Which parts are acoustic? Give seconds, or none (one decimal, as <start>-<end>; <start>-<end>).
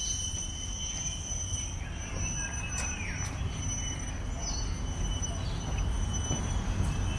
0.0-7.2